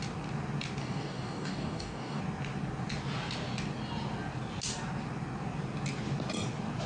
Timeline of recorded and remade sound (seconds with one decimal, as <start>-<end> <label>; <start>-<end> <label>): 0.0-0.8 recorded; 0.8-2.2 remade; 2.2-6.9 recorded